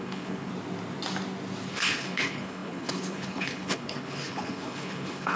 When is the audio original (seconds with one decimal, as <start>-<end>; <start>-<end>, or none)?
0.5-1.7